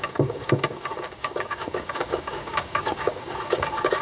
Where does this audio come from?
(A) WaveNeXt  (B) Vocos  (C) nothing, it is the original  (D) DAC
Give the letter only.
D